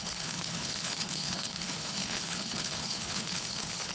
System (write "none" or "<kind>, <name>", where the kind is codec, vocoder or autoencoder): codec, HILCodec